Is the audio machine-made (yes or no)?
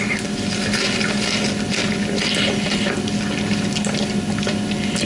no